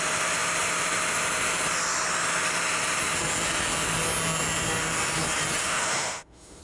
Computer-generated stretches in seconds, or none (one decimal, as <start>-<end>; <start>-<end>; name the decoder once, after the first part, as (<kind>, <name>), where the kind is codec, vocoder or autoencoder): 5.6-6.6 (autoencoder, DAC-VAE)